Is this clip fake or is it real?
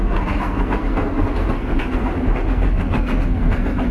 fake